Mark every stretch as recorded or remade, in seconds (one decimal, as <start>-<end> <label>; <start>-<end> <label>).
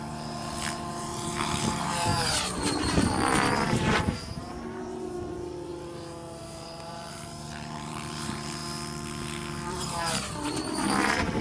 0.0-8.6 remade; 8.6-9.7 recorded; 9.7-11.4 remade